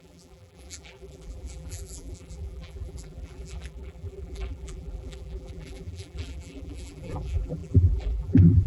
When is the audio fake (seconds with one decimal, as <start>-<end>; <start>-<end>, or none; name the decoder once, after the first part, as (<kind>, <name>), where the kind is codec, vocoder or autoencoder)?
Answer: 0.0-8.7 (vocoder, BigVGAN v2)